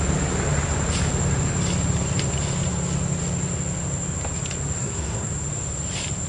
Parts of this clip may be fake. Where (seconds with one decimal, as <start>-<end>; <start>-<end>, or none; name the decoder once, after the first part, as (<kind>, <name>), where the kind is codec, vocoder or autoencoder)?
4.8-5.3 (codec, SNAC)